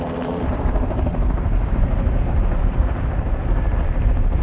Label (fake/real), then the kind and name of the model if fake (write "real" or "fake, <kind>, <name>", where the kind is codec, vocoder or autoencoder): fake, vocoder, BigVGAN v2